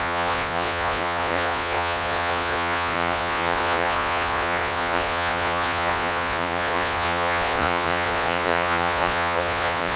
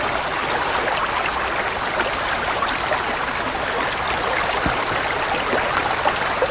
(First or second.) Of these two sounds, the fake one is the first